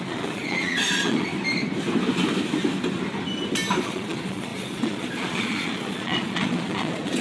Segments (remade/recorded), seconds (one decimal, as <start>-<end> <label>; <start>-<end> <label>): 0.0-1.3 remade; 1.3-3.8 recorded; 3.8-7.2 remade